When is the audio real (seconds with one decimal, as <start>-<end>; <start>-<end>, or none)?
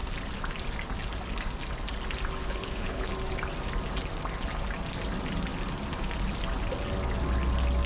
0.0-2.4; 3.1-7.9